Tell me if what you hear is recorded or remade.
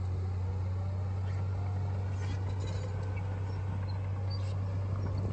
recorded